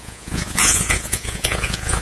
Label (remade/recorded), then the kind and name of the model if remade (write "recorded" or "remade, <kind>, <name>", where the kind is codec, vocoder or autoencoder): remade, vocoder, Vocos